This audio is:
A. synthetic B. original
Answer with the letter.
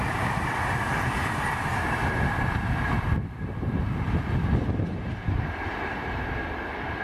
B